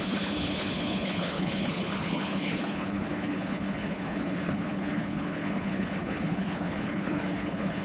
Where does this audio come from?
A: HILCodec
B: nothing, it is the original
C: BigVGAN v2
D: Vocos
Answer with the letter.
A